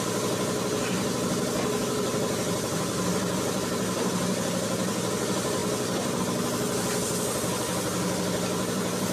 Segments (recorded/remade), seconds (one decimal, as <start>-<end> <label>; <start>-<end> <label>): 0.0-1.8 recorded; 1.8-4.1 remade; 4.1-9.1 recorded